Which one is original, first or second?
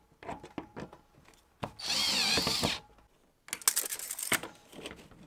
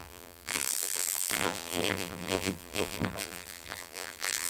first